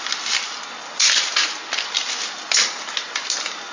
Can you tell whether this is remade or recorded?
recorded